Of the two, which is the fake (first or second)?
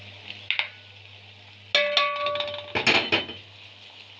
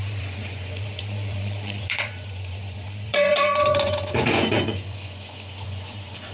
second